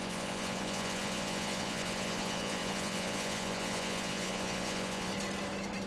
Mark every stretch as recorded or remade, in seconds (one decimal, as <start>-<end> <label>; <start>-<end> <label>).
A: 0.0-5.1 remade; 5.1-5.9 recorded